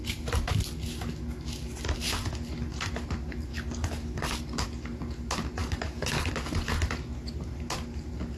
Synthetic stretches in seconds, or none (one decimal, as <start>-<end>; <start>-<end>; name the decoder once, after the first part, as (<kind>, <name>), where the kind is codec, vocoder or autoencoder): 3.5-4.3 (codec, DAC); 5.6-6.3